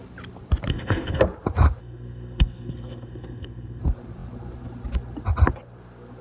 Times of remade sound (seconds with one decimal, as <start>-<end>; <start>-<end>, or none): 0.7-1.2; 1.8-3.8

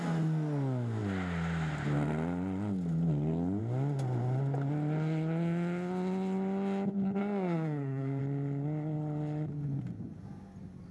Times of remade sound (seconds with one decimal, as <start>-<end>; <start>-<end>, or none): 7.2-8.2

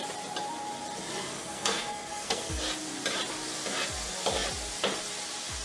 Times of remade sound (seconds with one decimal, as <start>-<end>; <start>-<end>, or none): 1.2-2.6

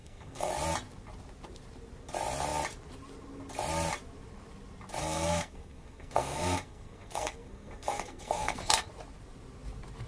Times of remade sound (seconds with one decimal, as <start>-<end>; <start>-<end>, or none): 0.0-0.5; 5.0-8.9

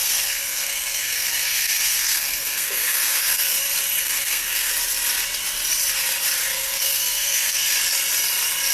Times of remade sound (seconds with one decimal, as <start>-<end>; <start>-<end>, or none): 0.0-3.6; 4.0-4.7; 6.5-7.6

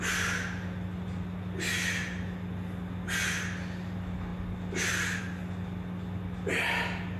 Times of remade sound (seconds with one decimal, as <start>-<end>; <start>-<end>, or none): none

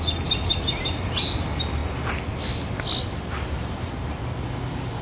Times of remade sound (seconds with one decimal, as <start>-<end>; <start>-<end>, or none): none